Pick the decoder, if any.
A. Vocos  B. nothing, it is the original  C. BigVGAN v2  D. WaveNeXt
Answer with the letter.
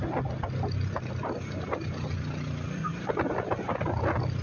B